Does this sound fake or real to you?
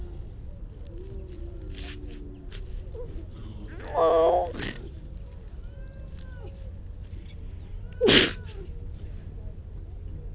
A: real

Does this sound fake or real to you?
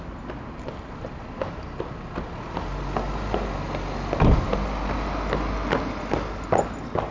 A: real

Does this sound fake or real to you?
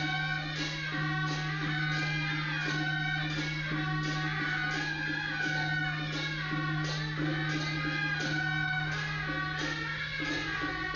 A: real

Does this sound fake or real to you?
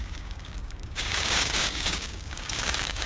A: fake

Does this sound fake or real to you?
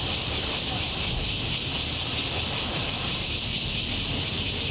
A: real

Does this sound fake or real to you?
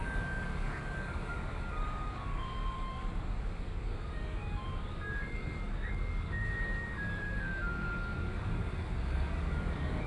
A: fake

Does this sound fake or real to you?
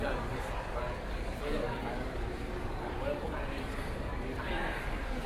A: fake